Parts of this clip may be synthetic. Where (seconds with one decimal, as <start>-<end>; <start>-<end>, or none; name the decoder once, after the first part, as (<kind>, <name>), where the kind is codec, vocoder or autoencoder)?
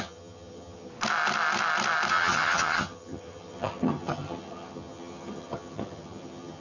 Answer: 0.0-0.9 (vocoder, HiFi-GAN); 2.1-6.6